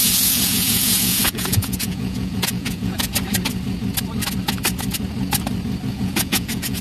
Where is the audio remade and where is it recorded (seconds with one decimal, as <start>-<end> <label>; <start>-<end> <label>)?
0.0-3.1 remade; 3.1-5.9 recorded; 5.9-6.8 remade